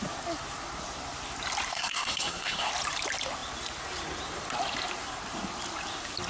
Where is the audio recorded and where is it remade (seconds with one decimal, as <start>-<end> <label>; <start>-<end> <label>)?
0.0-1.7 recorded; 1.7-2.7 remade; 2.7-6.3 recorded